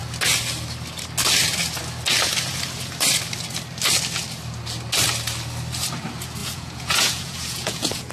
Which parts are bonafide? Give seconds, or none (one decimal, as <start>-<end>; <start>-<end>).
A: 0.0-6.4